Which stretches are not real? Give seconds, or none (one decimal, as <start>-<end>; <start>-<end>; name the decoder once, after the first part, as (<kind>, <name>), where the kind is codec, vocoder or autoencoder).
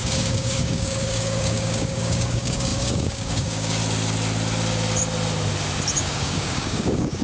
0.0-3.8 (codec, DAC); 6.0-7.2